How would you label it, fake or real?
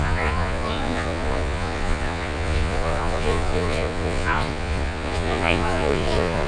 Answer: fake